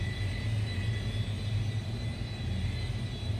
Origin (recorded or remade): recorded